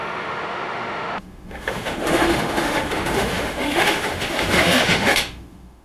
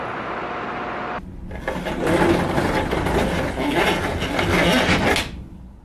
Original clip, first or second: second